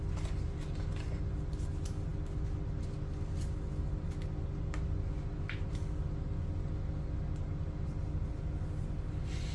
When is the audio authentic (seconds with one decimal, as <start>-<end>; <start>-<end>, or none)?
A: 0.0-9.5